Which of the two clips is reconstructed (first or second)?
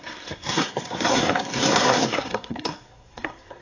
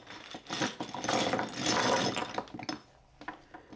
first